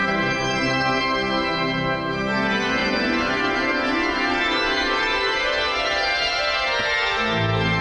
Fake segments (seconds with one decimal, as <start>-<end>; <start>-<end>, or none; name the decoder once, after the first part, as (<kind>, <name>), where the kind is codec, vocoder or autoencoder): 0.0-1.0 (vocoder, BigVGAN v2); 2.8-6.4